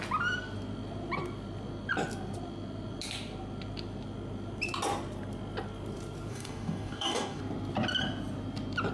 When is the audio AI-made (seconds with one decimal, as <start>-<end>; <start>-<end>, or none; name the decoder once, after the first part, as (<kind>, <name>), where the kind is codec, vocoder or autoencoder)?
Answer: 6.3-7.4 (codec, DAC)